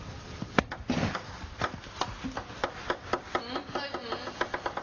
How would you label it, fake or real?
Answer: real